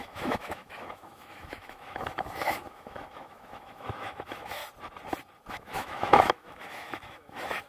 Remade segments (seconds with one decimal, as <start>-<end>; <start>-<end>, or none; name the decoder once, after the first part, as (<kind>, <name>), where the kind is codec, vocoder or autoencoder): 0.0-4.6 (autoencoder, DAC-VAE); 5.5-7.7